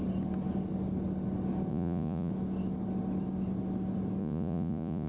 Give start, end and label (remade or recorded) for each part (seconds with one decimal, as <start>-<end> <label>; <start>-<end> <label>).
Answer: 0.0-1.7 recorded; 1.7-2.3 remade; 2.3-4.2 recorded; 4.2-5.1 remade